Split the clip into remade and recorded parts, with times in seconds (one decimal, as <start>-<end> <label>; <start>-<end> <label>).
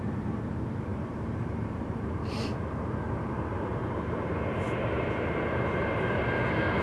0.0-6.8 remade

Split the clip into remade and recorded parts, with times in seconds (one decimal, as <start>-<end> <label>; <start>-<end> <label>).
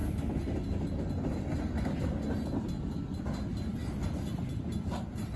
0.0-5.4 recorded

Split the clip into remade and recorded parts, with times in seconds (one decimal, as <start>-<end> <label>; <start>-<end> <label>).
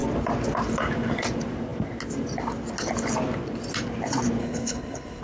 0.0-4.4 recorded; 4.4-5.2 remade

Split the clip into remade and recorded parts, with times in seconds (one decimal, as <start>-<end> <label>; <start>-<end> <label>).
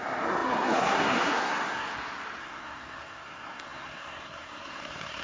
0.0-1.9 remade; 1.9-2.4 recorded; 2.4-5.2 remade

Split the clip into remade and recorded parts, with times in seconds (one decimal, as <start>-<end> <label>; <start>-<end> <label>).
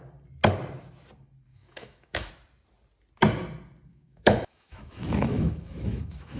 0.0-1.5 recorded; 1.5-2.3 remade; 2.3-3.9 recorded; 3.9-6.4 remade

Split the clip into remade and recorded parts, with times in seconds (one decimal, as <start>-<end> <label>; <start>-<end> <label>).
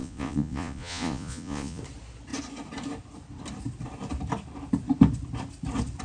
0.0-1.8 remade; 1.8-6.0 recorded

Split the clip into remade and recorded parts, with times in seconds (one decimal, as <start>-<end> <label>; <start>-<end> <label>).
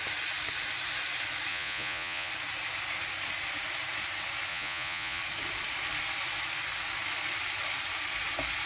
0.0-1.5 recorded; 1.5-2.3 remade; 2.3-4.5 recorded; 4.5-5.2 remade; 5.2-8.7 recorded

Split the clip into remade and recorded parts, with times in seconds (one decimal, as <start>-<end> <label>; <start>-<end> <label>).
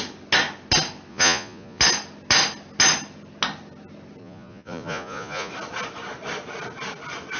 0.0-1.1 recorded; 1.1-1.8 remade; 1.8-4.2 recorded; 4.2-5.5 remade; 5.5-7.4 recorded